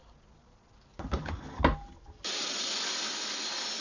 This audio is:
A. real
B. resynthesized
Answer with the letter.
A